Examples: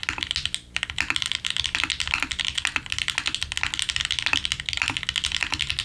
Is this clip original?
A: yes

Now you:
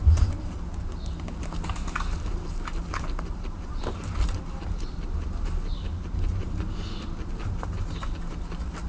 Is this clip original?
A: yes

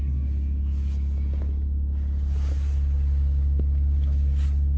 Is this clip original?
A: yes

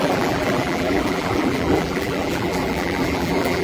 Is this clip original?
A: no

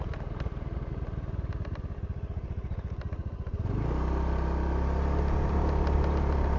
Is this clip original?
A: yes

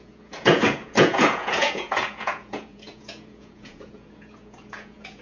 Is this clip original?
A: no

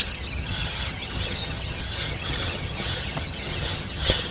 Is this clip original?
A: no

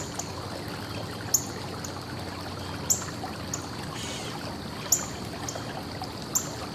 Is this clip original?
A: yes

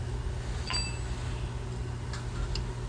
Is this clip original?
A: yes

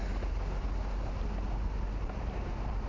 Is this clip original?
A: yes